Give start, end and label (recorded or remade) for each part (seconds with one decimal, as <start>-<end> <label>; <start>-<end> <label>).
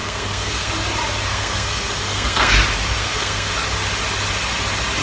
0.0-0.7 remade; 0.7-1.3 recorded; 1.3-2.5 remade; 2.5-3.0 recorded; 3.0-3.5 remade; 3.5-5.0 recorded